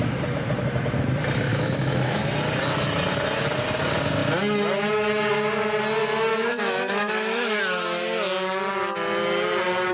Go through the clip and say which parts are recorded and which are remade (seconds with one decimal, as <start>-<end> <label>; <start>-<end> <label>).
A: 0.0-1.5 recorded; 1.5-2.2 remade; 2.2-6.3 recorded; 6.3-7.6 remade; 7.6-9.9 recorded